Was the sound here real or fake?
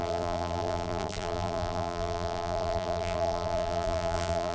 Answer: fake